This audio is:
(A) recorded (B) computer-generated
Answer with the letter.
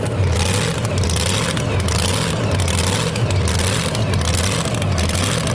A